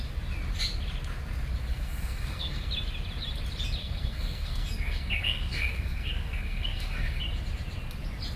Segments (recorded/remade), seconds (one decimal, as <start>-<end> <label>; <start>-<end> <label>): 0.0-1.7 recorded; 1.7-2.7 remade; 2.7-3.8 recorded; 3.8-7.2 remade; 7.2-8.4 recorded